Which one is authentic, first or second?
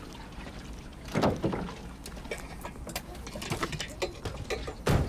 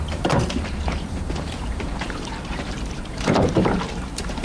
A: first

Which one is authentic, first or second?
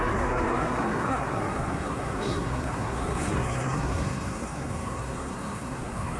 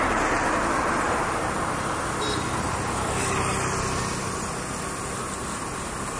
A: second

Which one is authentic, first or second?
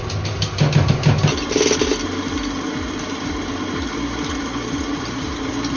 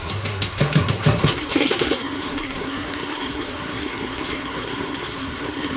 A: first